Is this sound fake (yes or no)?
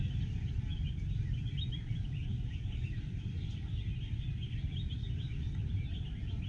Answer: yes